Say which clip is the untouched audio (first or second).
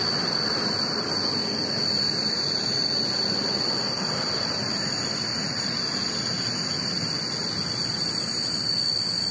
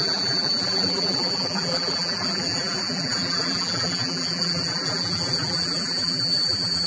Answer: first